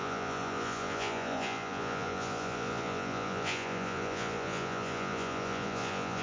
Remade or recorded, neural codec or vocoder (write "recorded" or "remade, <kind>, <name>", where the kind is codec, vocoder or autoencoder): remade, vocoder, Vocos